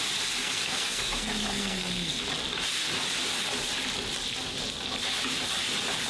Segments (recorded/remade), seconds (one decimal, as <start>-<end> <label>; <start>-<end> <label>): 0.0-0.4 recorded; 0.4-2.2 remade; 2.2-6.1 recorded